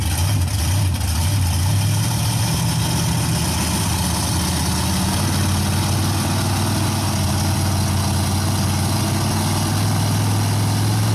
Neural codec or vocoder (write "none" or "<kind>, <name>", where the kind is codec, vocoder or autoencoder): none